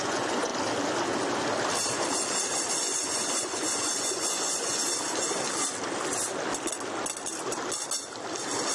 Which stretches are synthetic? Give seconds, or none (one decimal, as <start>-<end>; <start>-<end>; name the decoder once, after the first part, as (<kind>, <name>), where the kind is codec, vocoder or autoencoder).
0.0-0.5 (vocoder, Vocos); 2.7-4.8